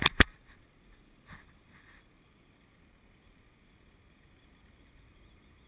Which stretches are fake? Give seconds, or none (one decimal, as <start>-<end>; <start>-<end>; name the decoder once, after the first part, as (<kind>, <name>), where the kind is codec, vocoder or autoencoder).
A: none